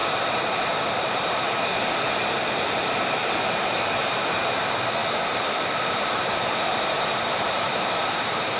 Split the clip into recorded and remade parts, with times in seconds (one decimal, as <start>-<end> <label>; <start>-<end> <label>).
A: 0.0-1.1 recorded; 1.1-8.6 remade